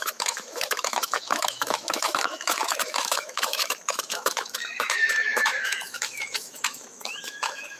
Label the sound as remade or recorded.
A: remade